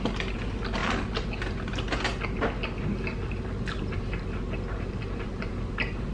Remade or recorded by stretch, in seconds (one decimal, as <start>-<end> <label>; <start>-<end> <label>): 0.0-6.1 recorded